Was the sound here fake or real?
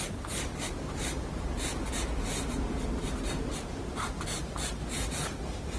real